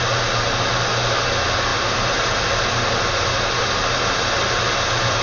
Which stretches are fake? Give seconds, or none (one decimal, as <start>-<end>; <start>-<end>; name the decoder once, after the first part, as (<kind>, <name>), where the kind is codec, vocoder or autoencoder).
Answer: none